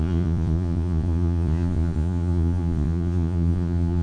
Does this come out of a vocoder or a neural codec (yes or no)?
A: yes